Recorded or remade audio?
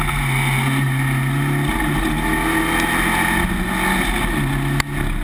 recorded